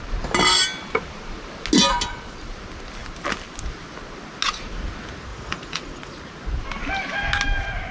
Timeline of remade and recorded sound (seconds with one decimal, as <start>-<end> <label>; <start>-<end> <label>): 0.0-5.3 recorded; 5.3-6.2 remade; 6.2-7.9 recorded